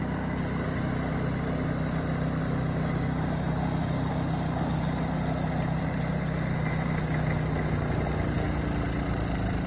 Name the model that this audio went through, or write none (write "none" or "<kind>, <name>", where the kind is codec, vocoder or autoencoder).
none